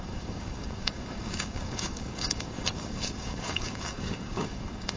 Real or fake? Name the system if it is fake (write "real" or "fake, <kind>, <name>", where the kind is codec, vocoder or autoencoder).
fake, codec, DAC